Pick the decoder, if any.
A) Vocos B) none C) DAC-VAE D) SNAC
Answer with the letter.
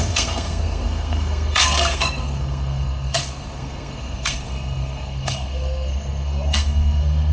D